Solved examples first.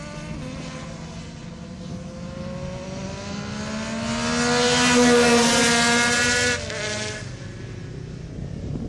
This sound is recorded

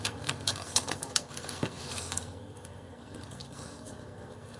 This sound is remade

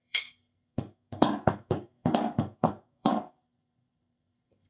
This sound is remade